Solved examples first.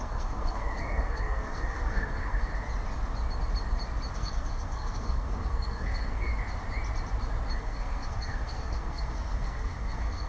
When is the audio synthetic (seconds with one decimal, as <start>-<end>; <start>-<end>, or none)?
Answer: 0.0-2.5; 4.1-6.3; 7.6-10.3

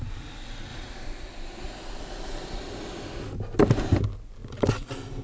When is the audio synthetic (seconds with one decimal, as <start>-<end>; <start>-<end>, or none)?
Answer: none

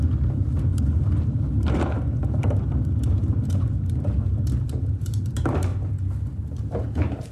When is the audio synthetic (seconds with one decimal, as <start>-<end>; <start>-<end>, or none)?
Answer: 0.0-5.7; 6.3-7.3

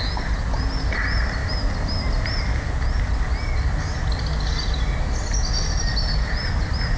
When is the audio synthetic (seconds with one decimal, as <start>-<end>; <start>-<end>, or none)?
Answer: none

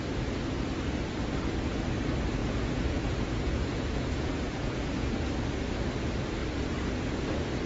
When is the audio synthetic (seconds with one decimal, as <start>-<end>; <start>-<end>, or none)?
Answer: 2.4-5.3

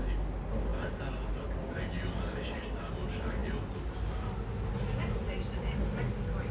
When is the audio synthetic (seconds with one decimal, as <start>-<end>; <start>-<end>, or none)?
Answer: none

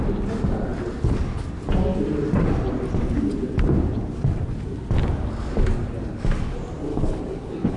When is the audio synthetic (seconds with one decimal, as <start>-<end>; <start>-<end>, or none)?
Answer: 6.9-7.8

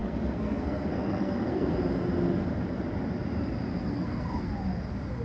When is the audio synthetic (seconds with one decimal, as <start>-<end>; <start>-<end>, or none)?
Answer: 0.0-1.8; 3.8-4.5